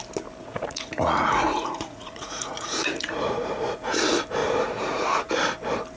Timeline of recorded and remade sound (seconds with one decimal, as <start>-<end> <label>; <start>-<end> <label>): 0.0-0.4 recorded; 0.4-4.0 remade; 4.0-4.4 recorded; 4.4-5.3 remade; 5.3-6.0 recorded